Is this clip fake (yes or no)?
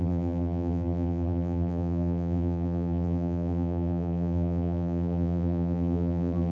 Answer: yes